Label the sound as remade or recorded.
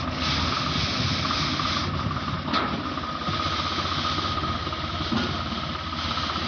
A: recorded